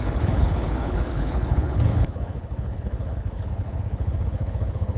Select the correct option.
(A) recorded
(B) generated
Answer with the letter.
B